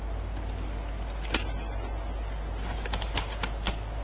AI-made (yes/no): no